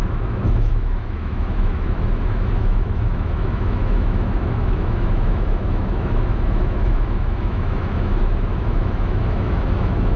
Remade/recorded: remade